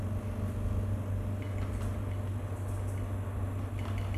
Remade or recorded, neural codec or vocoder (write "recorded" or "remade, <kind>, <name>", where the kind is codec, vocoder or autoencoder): recorded